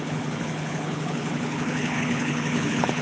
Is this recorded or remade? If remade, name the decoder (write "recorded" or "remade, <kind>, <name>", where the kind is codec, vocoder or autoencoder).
remade, codec, HILCodec